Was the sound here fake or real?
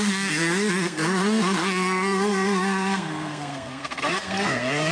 fake